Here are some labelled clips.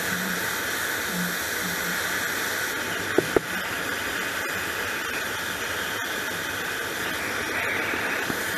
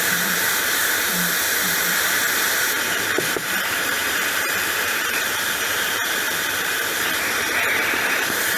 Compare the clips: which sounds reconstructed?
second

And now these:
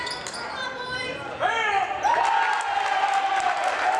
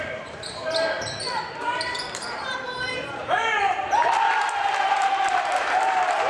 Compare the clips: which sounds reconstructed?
second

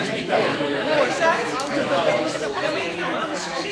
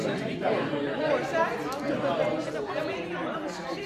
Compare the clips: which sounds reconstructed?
first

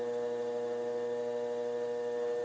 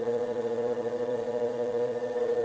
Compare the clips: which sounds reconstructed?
second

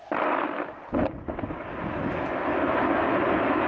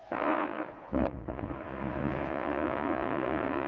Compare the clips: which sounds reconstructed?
second